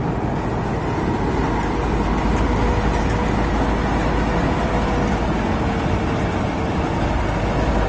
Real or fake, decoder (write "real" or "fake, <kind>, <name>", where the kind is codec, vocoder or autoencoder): real